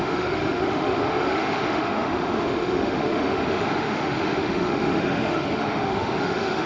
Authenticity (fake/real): fake